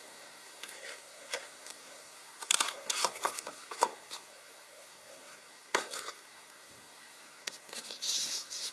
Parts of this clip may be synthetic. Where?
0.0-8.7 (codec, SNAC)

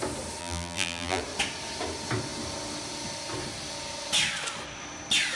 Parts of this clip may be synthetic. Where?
0.4-1.2 (vocoder, BigVGAN v2)

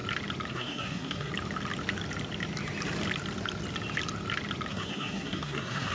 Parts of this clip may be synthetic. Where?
0.5-1.3 (codec, SNAC); 4.7-5.9